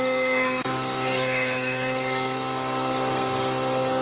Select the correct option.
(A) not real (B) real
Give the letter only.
A